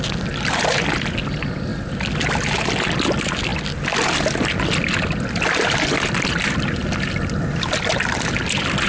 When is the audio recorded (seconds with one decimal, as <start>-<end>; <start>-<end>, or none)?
0.0-1.7; 2.3-6.8; 7.4-8.9